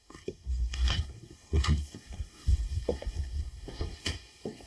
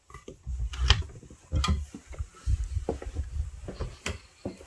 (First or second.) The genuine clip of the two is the second